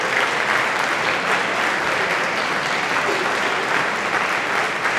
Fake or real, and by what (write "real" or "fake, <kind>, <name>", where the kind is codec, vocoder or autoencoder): real